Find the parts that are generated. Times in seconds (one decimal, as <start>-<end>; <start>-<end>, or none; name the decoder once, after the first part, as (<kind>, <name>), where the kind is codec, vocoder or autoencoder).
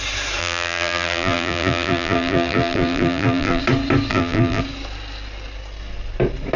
0.4-3.6 (vocoder, BigVGAN v2); 4.1-4.6